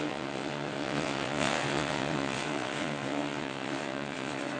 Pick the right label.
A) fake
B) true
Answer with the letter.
A